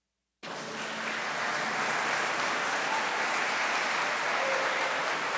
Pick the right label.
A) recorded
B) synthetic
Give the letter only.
A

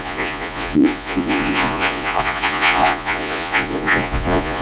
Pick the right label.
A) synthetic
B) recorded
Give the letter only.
A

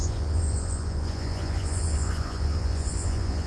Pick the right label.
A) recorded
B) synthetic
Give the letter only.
B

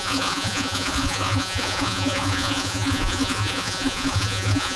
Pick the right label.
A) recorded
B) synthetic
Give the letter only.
B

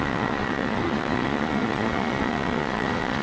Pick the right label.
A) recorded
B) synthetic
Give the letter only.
B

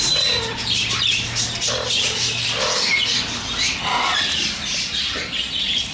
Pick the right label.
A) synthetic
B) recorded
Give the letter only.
B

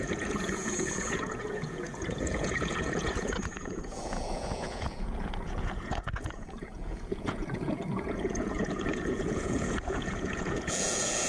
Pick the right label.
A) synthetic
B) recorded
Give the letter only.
A